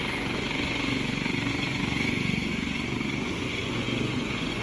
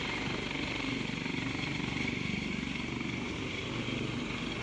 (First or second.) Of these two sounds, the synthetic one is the first